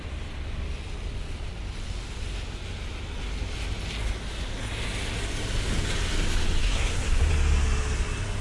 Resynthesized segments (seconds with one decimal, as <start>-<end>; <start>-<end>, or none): 6.6-7.3